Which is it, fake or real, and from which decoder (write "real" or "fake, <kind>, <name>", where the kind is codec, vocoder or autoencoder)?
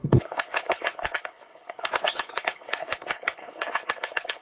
fake, codec, HILCodec